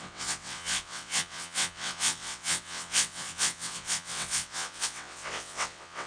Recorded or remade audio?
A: remade